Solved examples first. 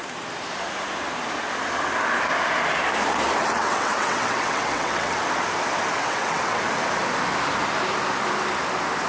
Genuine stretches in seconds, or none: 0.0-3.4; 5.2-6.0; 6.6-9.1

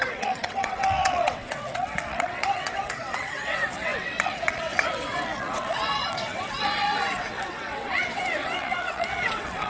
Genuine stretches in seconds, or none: none

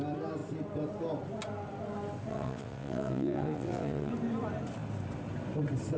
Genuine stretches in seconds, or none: 0.0-2.3; 4.1-6.0

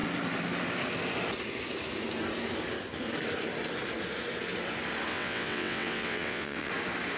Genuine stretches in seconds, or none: 0.0-5.1; 6.7-7.2

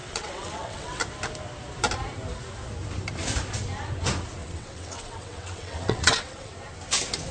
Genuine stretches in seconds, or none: 1.0-4.4; 6.5-7.3